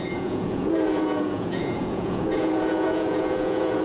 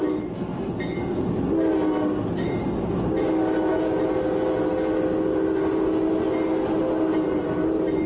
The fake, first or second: first